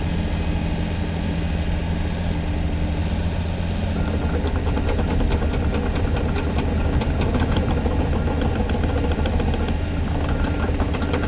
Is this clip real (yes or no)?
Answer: yes